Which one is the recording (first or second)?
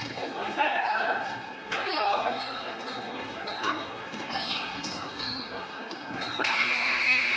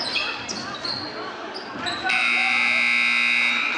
second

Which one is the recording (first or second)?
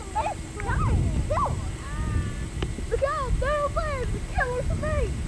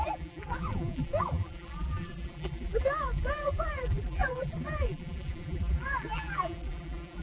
first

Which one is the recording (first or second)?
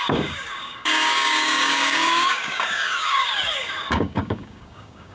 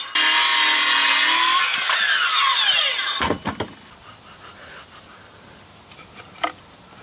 second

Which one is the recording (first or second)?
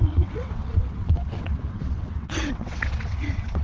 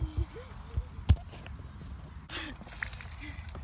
second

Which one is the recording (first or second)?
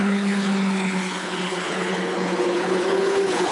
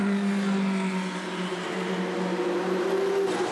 second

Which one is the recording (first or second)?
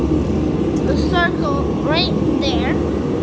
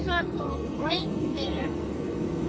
first